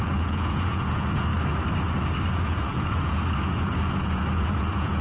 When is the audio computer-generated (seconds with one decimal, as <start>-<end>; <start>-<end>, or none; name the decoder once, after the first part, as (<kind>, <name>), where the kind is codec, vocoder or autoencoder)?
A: 0.0-1.3 (vocoder, Vocos); 2.3-5.0